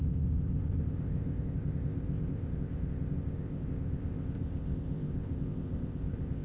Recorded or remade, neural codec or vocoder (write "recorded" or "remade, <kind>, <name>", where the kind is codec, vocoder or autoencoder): remade, codec, ZipCodec